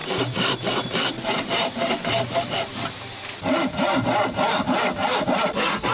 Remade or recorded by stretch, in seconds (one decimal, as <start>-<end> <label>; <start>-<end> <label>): 0.0-3.4 remade; 3.4-5.9 recorded